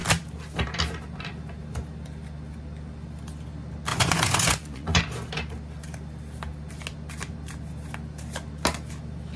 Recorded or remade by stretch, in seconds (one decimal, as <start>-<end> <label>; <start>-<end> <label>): 0.0-3.9 recorded; 3.9-5.0 remade; 5.0-9.4 recorded